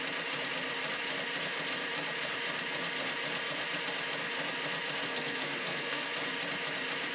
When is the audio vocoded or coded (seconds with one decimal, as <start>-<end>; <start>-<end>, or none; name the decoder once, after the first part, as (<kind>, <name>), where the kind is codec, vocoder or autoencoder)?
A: 5.0-6.1 (codec, SNAC)